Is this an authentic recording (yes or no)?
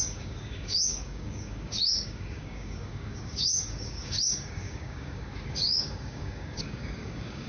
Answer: no